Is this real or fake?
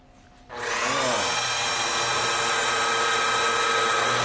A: real